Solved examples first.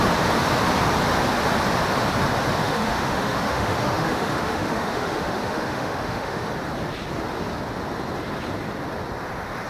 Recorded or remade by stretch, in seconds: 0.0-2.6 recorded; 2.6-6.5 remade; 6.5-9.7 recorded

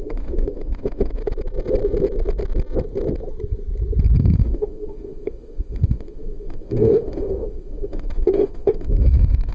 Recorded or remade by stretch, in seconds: 0.0-1.2 remade; 1.2-4.2 recorded; 4.2-9.5 remade

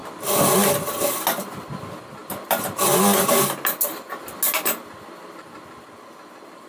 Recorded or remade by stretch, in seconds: 0.0-6.7 recorded

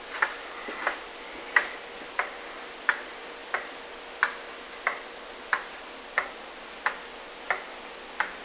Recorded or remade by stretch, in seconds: 0.0-8.4 recorded

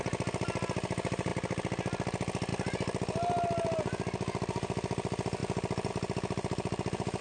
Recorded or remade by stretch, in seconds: 0.0-7.2 recorded

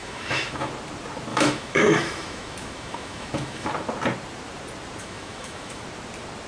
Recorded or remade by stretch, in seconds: 0.0-0.7 remade; 0.7-1.3 recorded; 1.3-3.7 remade; 3.7-5.0 recorded; 5.0-5.8 remade; 5.8-6.5 recorded

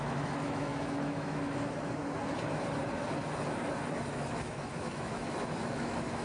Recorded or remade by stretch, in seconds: 0.0-2.0 remade; 2.0-4.1 recorded; 4.1-6.2 remade